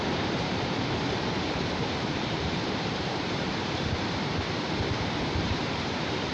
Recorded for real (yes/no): no